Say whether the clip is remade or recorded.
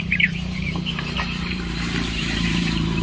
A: remade